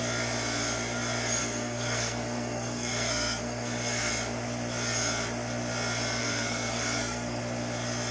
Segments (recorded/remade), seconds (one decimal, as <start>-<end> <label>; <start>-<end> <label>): 0.0-1.4 recorded; 1.4-4.1 remade; 4.1-6.2 recorded; 6.2-7.4 remade; 7.4-8.1 recorded